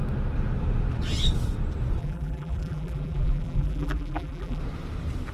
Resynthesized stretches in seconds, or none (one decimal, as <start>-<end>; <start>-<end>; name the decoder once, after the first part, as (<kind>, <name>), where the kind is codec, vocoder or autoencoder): 2.0-4.6 (vocoder, BigVGAN v2)

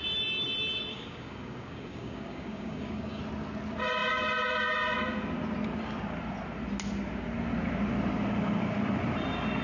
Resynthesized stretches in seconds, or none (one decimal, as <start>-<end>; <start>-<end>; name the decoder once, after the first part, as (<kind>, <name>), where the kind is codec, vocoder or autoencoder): 0.9-3.2 (codec, DAC)

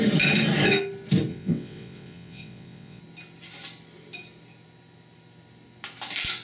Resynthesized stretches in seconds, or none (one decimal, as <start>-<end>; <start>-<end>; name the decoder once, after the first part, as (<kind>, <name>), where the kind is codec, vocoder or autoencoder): 1.3-3.0 (vocoder, WaveNeXt)